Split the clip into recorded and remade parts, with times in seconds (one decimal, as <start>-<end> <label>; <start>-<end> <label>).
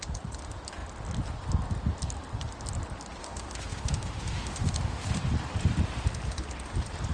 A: 0.0-3.2 recorded; 3.2-5.2 remade; 5.2-7.1 recorded